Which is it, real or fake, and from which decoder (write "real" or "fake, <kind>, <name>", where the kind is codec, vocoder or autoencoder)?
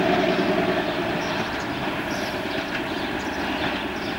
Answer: real